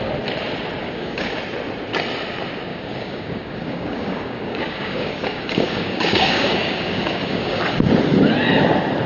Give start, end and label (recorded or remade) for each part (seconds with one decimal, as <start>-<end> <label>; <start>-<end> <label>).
0.0-0.8 recorded; 0.8-1.4 remade; 1.4-2.7 recorded; 2.7-7.6 remade; 7.6-9.1 recorded